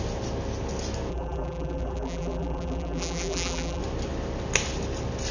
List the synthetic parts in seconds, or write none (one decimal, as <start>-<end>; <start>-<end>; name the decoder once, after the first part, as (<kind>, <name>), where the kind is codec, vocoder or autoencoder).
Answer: 1.1-3.8 (vocoder, BigVGAN v2)